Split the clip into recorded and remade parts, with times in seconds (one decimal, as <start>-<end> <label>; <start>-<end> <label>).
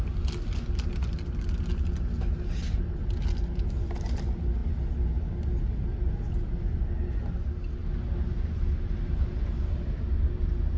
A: 0.0-10.8 recorded